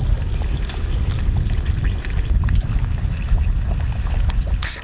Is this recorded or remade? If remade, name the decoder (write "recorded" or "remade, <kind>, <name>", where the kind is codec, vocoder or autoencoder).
recorded